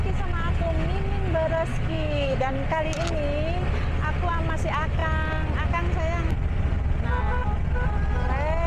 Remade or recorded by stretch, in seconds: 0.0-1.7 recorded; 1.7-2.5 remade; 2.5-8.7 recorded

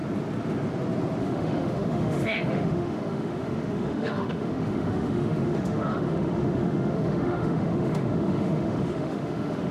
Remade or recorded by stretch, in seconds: 0.0-1.2 recorded; 1.2-9.7 remade

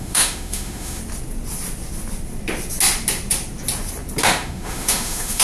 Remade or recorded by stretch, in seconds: 0.0-1.0 remade; 1.0-4.2 recorded; 4.2-5.4 remade

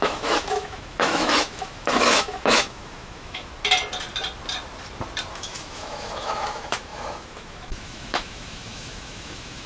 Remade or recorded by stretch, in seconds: 0.0-3.5 remade; 3.5-5.3 recorded; 5.3-9.7 remade

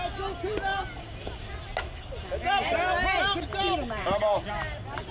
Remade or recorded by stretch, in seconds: 0.0-5.1 recorded

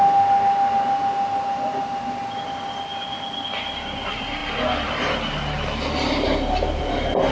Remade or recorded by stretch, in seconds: 0.0-7.3 recorded

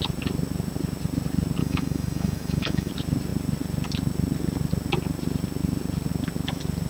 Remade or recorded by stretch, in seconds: 0.0-1.6 recorded; 1.6-2.9 remade; 2.9-6.9 recorded

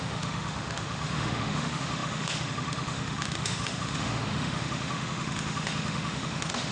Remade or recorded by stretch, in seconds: 0.0-6.7 remade